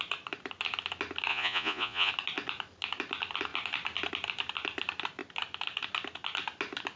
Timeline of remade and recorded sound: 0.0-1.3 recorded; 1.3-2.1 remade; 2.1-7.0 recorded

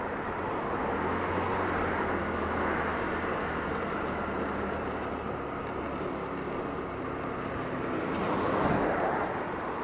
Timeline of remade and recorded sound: 0.0-1.5 recorded; 1.5-2.2 remade; 2.2-2.9 recorded; 2.9-4.8 remade; 4.8-9.8 recorded

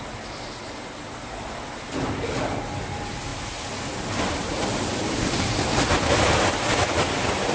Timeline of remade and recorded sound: 0.0-7.5 recorded

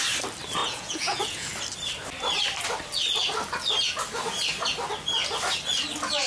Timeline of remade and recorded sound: 0.0-0.6 recorded; 0.6-1.5 remade; 1.5-6.3 recorded

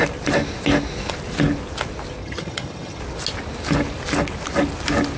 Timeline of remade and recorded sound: 0.0-2.2 recorded; 2.2-3.0 remade; 3.0-5.2 recorded

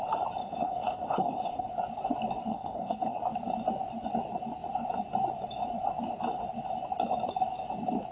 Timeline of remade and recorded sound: 0.0-0.4 recorded; 0.4-1.7 remade; 1.7-2.5 recorded; 2.5-3.2 remade; 3.2-8.1 recorded

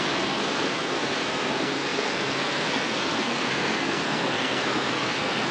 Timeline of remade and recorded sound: 0.0-5.5 remade

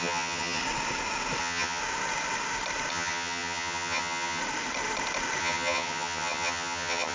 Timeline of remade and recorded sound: 0.0-0.6 remade; 0.6-1.4 recorded; 1.4-1.8 remade; 1.8-2.9 recorded; 2.9-4.4 remade; 4.4-5.4 recorded; 5.4-7.1 remade